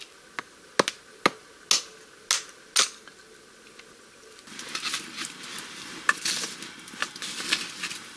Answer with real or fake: real